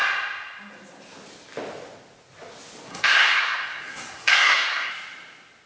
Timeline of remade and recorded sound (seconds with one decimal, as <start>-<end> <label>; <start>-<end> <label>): 0.0-2.9 recorded; 2.9-4.9 remade; 4.9-5.7 recorded